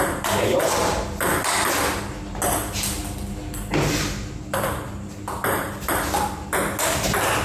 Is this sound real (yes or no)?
yes